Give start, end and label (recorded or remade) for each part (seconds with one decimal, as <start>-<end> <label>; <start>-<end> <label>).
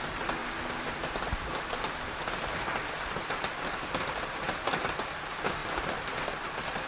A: 0.0-5.6 remade; 5.6-6.5 recorded; 6.5-6.9 remade